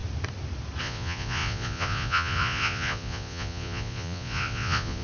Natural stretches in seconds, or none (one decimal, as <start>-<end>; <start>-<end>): 0.0-0.8